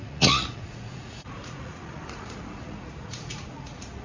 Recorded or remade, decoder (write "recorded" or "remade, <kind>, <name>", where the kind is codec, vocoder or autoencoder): remade, vocoder, Vocos